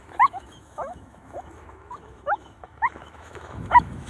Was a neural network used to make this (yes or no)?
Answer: yes